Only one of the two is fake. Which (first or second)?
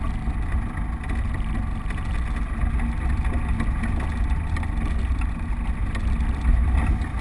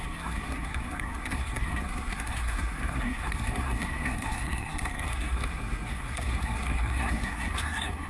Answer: second